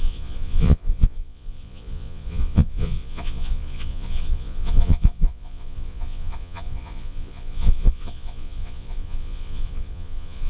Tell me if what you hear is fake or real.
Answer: fake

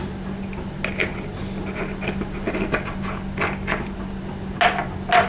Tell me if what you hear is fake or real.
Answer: real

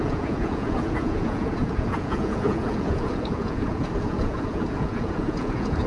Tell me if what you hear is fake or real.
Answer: fake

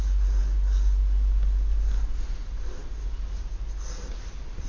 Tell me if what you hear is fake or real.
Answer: real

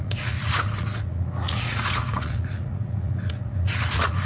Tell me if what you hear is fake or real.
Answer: fake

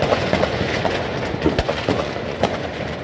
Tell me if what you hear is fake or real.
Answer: fake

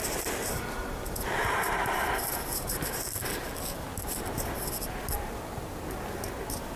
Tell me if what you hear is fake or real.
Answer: real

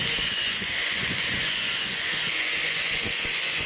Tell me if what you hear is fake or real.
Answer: fake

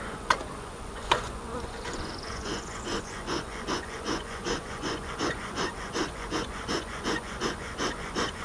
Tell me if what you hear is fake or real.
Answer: fake